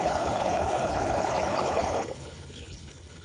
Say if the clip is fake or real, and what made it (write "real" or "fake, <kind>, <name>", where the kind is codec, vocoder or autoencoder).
fake, codec, HILCodec